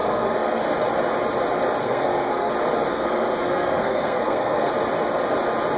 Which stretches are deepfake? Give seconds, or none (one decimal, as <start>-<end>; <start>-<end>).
0.0-0.6; 1.8-2.5; 2.9-4.7

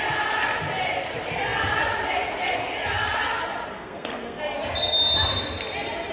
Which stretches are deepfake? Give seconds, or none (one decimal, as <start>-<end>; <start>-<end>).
3.7-4.4

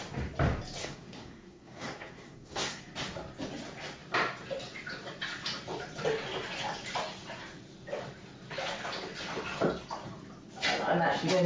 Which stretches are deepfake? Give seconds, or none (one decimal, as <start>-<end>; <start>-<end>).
0.8-2.8

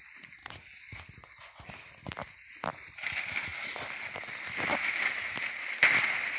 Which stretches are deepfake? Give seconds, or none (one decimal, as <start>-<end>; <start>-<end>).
none

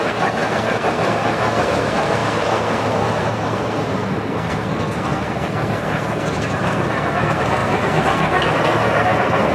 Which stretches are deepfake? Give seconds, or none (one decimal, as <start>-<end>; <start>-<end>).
0.0-9.5

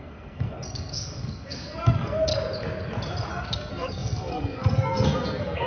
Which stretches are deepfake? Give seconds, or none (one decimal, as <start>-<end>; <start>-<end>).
0.0-2.3; 3.3-5.7

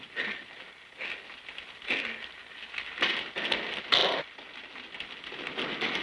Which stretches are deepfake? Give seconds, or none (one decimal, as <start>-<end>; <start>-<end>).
none